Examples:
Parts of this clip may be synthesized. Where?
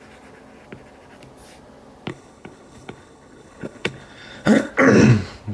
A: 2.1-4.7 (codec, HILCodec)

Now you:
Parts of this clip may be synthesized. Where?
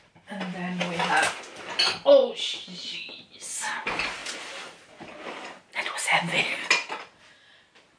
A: none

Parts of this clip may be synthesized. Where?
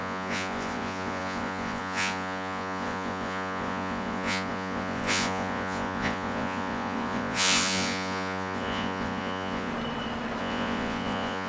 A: 0.0-9.7 (vocoder, Vocos); 10.4-11.5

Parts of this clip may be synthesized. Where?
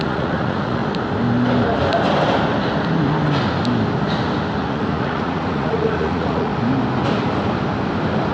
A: 0.0-0.8 (vocoder, Vocos); 4.6-6.5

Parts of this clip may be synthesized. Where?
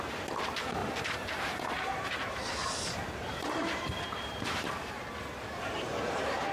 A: 0.8-4.7 (vocoder, BigVGAN v2)